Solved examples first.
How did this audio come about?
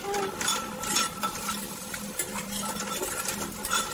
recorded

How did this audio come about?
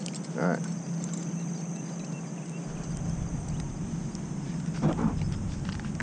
recorded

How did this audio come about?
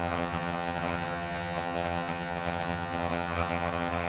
remade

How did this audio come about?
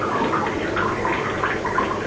recorded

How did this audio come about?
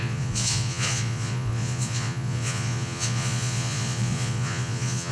remade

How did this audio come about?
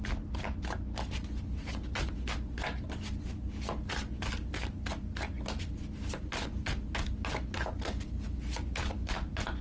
recorded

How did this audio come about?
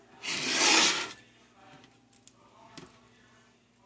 recorded